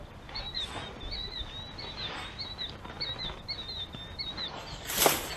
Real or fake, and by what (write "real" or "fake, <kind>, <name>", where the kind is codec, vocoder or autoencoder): real